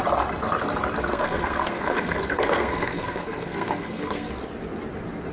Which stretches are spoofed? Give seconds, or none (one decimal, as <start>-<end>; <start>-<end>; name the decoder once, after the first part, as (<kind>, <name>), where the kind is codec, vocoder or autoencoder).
1.1-4.3 (codec, SNAC)

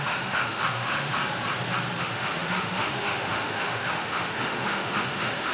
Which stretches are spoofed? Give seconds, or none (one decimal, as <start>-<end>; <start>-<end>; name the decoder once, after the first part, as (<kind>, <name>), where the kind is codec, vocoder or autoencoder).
0.0-1.2 (autoencoder, DAC-VAE); 2.0-5.5

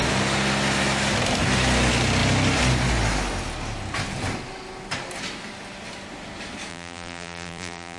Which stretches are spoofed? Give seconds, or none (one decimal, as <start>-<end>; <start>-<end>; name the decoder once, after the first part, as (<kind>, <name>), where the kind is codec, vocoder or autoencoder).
6.7-8.0 (vocoder, BigVGAN v2)

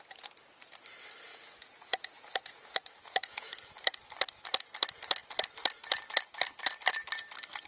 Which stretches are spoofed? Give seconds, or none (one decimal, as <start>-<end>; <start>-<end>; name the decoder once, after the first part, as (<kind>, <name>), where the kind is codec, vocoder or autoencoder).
1.3-3.5 (vocoder, Vocos)